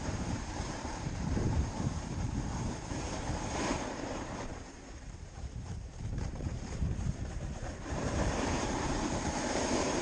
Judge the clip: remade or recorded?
remade